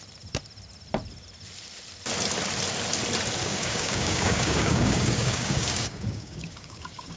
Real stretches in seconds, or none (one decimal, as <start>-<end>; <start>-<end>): 0.0-3.4